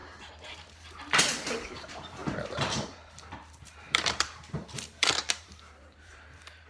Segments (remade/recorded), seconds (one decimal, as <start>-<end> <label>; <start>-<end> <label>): 0.0-1.2 recorded; 1.2-6.7 remade